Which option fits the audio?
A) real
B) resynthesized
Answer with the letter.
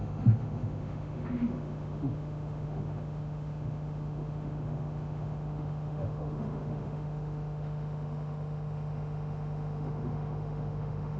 B